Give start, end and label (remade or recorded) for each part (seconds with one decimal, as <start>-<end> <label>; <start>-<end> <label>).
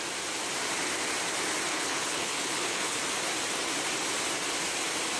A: 0.0-1.7 recorded; 1.7-3.0 remade; 3.0-5.2 recorded